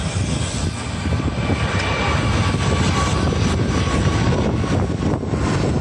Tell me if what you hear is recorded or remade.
recorded